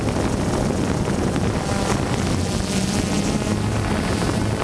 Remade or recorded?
recorded